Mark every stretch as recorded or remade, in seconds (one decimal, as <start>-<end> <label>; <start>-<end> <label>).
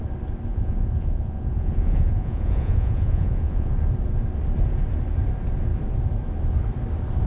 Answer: 0.0-0.5 recorded; 0.5-3.7 remade; 3.7-7.3 recorded